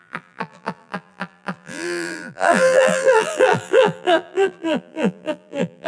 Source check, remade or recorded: remade